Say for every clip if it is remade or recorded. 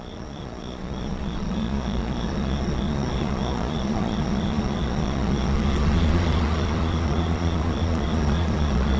remade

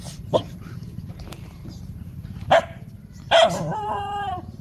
remade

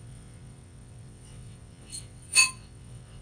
remade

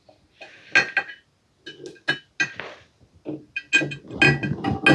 recorded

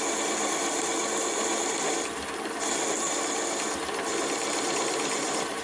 recorded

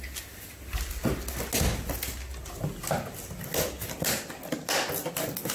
recorded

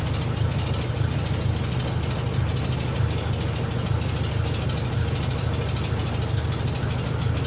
recorded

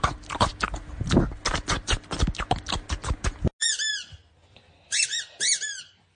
recorded